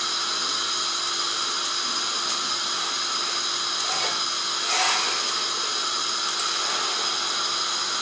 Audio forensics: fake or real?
real